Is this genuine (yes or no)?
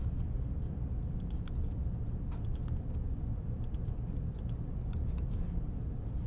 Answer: yes